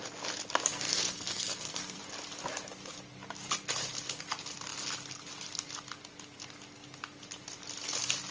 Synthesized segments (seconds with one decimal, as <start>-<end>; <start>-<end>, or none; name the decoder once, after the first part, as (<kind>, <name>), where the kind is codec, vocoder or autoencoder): 0.7-2.0 (codec, SNAC)